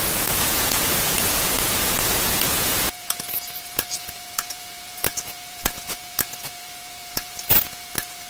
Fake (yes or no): yes